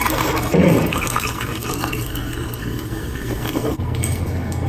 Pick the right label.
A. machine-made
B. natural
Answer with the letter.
A